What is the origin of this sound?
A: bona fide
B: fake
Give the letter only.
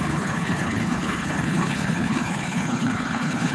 B